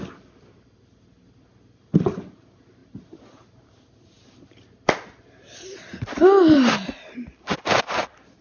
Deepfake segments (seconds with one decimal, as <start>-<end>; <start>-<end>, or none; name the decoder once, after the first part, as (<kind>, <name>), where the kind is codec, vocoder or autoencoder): none